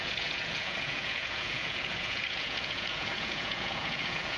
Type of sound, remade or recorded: remade